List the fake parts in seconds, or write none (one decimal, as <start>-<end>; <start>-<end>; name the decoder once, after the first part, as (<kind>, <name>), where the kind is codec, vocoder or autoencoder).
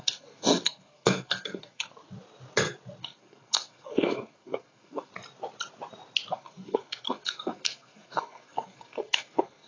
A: 0.0-1.8 (codec, SNAC); 3.0-5.1; 6.3-9.7